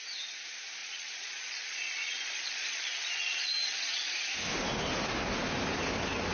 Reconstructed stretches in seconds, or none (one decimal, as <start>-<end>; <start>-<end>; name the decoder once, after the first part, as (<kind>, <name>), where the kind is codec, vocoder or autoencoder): 0.8-4.1 (vocoder, Vocos)